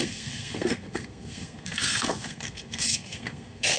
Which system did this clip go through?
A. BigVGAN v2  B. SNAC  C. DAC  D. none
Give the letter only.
B